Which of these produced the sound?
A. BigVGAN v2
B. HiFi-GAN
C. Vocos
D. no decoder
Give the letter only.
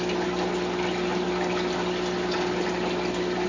D